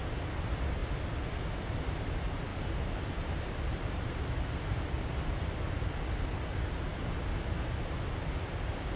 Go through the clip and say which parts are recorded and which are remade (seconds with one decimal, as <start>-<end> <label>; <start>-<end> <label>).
0.0-2.5 recorded; 2.5-4.8 remade; 4.8-9.0 recorded